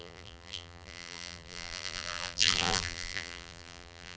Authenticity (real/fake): fake